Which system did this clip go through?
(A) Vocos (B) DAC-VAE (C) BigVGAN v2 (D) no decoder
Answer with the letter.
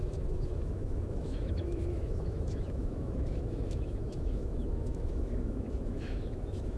B